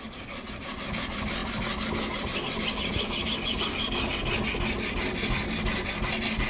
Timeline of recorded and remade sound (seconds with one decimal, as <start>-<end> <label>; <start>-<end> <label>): 0.0-6.5 recorded